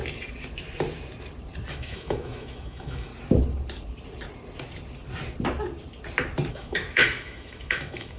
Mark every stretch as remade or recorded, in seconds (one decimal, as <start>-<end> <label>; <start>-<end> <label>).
0.0-1.7 recorded; 1.7-3.1 remade; 3.1-6.5 recorded; 6.5-8.2 remade